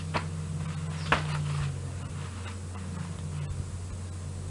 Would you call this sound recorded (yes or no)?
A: yes